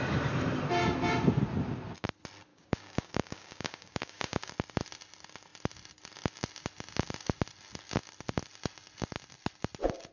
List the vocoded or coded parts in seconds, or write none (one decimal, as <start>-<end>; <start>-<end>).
2.5-4.5